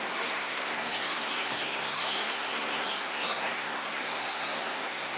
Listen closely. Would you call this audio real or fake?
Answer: fake